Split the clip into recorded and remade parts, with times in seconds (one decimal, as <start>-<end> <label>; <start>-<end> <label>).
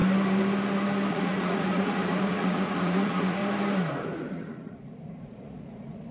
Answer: 0.0-1.1 recorded; 1.1-3.4 remade; 3.4-4.3 recorded; 4.3-6.1 remade